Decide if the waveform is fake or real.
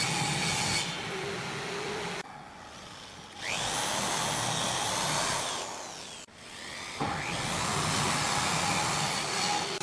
real